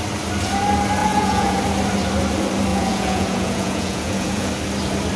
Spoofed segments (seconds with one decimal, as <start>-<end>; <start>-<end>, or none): 1.0-1.6; 2.7-4.5